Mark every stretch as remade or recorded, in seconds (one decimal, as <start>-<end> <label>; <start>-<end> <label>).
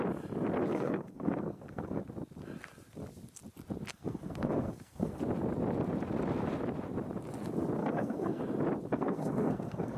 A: 0.0-0.7 recorded; 0.7-2.0 remade; 2.0-3.9 recorded; 3.9-5.2 remade; 5.2-7.8 recorded; 7.8-8.4 remade; 8.4-8.9 recorded; 8.9-10.0 remade